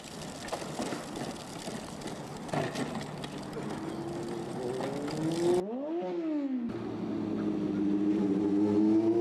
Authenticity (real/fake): real